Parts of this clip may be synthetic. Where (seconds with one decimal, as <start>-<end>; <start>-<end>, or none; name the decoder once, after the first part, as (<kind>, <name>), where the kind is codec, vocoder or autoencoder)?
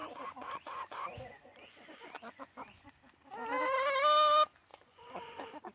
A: 0.0-2.9 (vocoder, Vocos); 4.7-5.7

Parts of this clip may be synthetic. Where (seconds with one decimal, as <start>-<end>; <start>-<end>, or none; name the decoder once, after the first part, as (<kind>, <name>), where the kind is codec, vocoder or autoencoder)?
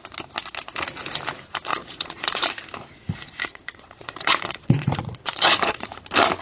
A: 1.7-2.4 (vocoder, Vocos); 3.5-6.0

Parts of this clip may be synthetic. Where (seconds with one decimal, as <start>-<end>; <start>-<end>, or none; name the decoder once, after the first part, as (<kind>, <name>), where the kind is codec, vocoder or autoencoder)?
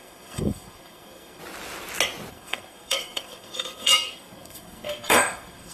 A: 0.0-1.4 (codec, SNAC); 2.3-5.7